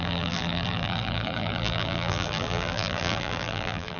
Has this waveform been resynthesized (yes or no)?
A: yes